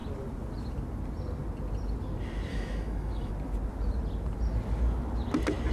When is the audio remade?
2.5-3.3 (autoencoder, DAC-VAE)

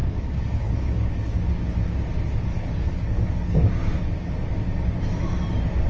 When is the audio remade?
0.0-1.4 (codec, DAC); 2.5-3.7

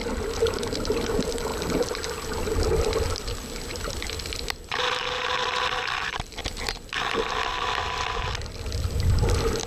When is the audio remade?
none

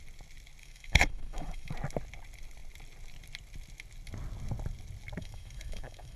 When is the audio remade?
0.6-1.7 (autoencoder, DAC-VAE); 5.2-6.2

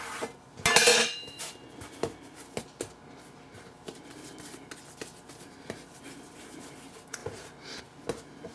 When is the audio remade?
0.9-1.4 (autoencoder, DAC-VAE)

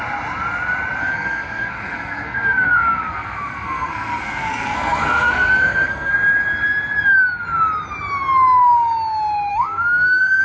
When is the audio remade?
1.0-6.1 (codec, SNAC); 9.5-10.4

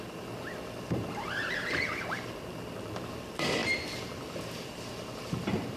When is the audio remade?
0.0-5.8 (vocoder, BigVGAN v2)

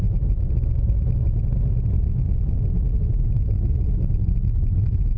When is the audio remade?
0.0-1.4 (autoencoder, DAC-VAE); 3.0-5.2